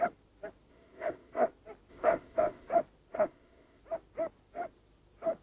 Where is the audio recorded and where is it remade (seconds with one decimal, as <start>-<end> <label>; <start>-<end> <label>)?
0.0-0.7 recorded; 0.7-1.5 remade; 1.5-1.9 recorded; 1.9-2.7 remade; 2.7-3.1 recorded; 3.1-3.8 remade; 3.8-5.4 recorded